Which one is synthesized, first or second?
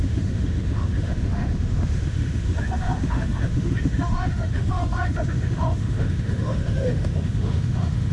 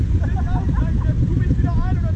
first